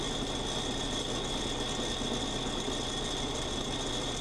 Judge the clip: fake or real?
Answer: real